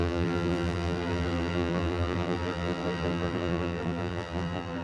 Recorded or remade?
remade